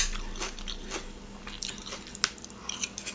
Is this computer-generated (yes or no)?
no